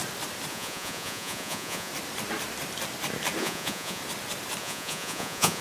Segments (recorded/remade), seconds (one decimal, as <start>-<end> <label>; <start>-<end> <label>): 0.0-0.5 recorded; 0.5-1.9 remade; 1.9-3.4 recorded; 3.4-4.0 remade; 4.0-4.6 recorded; 4.6-5.6 remade